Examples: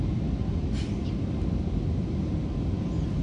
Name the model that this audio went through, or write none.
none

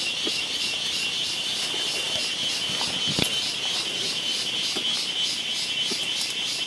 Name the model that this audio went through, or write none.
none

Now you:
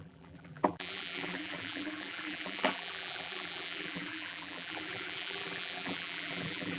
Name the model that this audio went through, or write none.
vocoder, BigVGAN v2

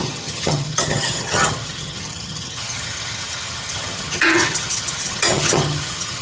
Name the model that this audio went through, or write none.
vocoder, HiFi-GAN